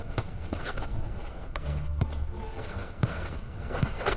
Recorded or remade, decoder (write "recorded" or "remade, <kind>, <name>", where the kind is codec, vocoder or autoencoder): remade, codec, SNAC